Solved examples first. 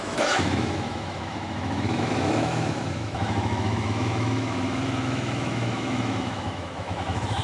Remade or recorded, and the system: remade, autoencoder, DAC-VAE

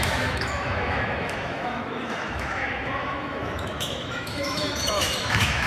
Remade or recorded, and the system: remade, autoencoder, DAC-VAE